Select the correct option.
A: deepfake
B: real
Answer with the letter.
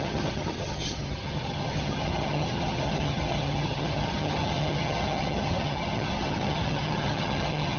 A